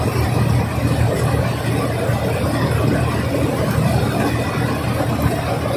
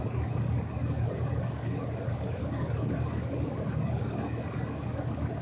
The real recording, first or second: first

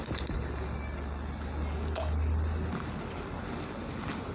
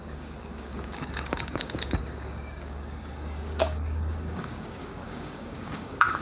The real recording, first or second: first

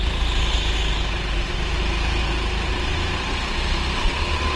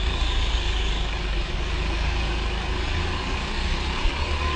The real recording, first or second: first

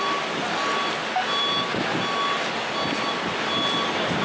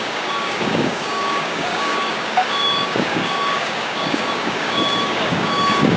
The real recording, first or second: first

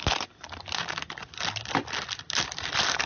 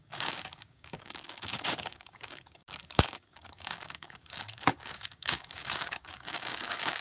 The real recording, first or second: first